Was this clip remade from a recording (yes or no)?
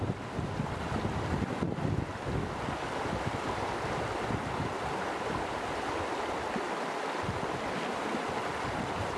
no